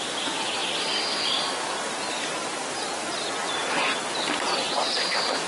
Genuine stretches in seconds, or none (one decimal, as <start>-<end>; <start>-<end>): 0.0-5.5